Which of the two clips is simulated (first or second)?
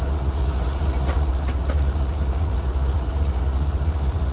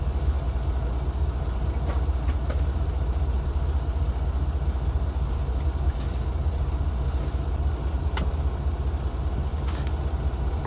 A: first